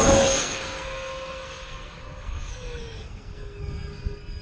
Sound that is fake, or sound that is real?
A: fake